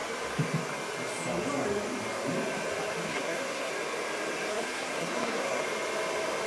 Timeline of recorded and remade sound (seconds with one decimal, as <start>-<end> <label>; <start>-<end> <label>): 0.0-3.1 recorded; 3.1-3.7 remade; 3.7-4.5 recorded; 4.5-5.6 remade; 5.6-6.5 recorded

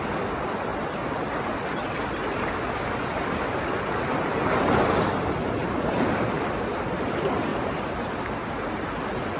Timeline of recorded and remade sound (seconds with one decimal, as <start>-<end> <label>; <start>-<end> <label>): 0.0-5.6 recorded; 5.6-6.4 remade; 6.4-7.5 recorded; 7.5-8.9 remade; 8.9-9.4 recorded

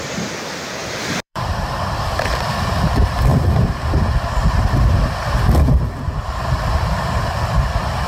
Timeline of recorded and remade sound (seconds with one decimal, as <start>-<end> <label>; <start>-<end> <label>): 0.0-0.8 recorded; 0.8-2.5 remade; 2.5-3.3 recorded; 3.3-3.8 remade; 3.8-8.1 recorded